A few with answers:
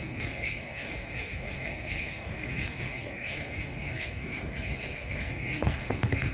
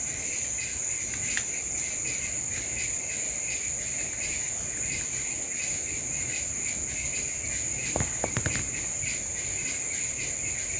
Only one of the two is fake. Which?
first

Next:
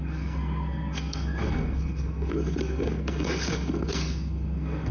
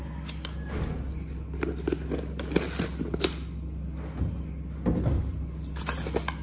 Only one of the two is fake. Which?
first